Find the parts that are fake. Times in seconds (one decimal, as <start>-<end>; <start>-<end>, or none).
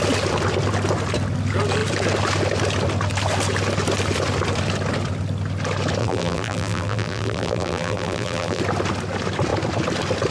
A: 6.0-8.6